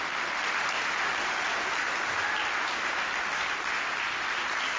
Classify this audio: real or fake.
real